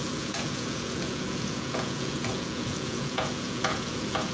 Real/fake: fake